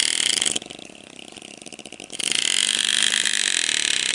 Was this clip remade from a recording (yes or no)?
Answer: yes